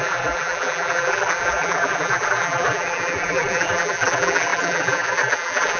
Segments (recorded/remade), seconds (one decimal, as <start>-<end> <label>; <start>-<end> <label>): 0.0-5.8 remade